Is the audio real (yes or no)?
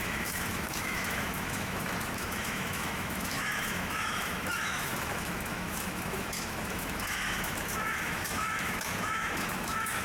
no